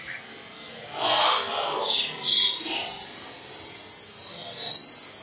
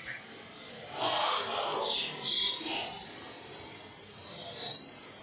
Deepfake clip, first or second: second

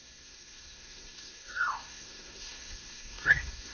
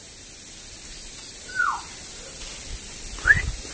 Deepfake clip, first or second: first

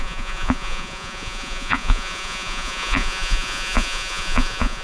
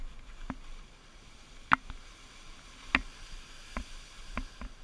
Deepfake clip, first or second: first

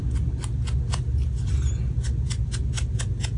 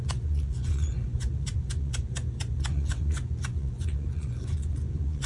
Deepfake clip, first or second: second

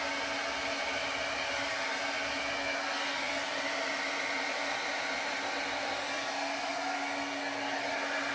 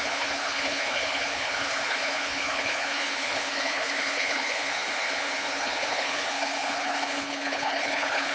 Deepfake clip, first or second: second